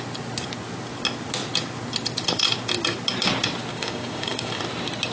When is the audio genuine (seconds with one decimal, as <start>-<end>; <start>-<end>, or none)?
0.0-3.7; 4.6-5.1